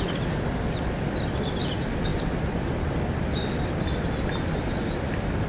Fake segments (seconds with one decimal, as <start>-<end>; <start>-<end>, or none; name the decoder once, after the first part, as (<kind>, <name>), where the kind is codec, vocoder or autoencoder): none